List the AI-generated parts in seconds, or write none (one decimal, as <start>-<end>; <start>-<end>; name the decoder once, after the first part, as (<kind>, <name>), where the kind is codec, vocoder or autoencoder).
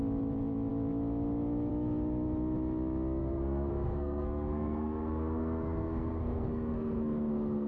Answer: 3.2-7.7 (codec, SNAC)